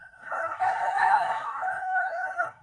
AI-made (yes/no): yes